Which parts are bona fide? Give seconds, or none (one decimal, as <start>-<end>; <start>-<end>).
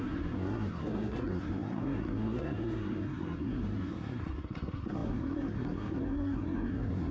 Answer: none